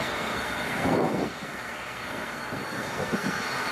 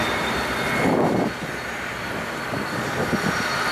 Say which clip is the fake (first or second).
first